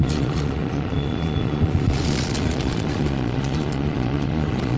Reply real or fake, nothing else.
fake